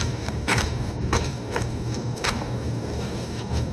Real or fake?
fake